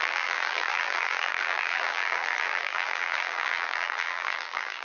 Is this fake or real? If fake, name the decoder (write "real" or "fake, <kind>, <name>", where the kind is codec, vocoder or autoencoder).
fake, vocoder, BigVGAN v2